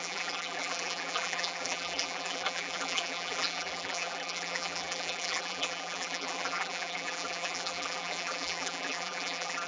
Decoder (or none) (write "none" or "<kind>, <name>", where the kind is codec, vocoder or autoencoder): vocoder, BigVGAN v2